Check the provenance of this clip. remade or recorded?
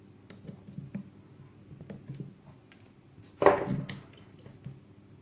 recorded